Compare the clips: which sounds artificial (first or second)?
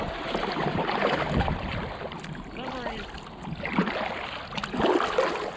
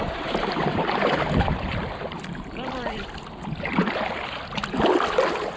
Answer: second